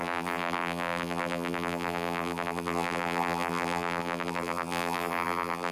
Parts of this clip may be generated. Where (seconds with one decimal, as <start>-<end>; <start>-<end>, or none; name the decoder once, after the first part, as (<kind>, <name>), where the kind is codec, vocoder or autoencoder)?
0.0-5.7 (vocoder, BigVGAN v2)